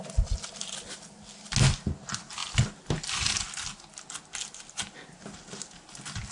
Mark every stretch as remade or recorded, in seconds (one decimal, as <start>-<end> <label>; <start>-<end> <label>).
0.0-6.3 recorded